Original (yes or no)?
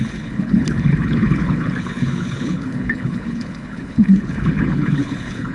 no